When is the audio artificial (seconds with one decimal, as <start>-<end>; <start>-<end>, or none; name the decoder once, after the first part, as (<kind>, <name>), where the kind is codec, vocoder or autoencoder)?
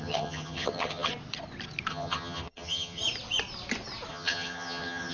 0.0-1.1 (vocoder, HiFi-GAN); 1.9-3.0; 4.1-5.1